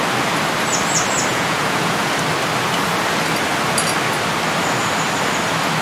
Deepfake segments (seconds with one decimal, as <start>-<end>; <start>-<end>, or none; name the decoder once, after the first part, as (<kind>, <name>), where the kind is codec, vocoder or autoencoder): 1.3-2.1 (vocoder, Vocos)